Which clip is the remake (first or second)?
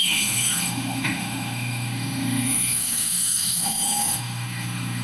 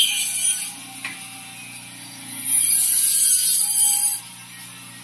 first